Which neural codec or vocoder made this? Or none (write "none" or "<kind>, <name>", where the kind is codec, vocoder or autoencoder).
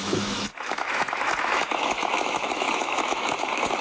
autoencoder, DAC-VAE